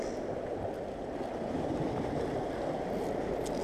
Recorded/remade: recorded